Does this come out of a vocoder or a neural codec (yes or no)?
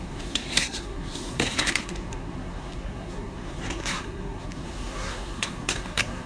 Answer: yes